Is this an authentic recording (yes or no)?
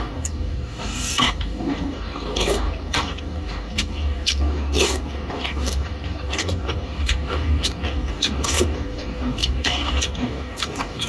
no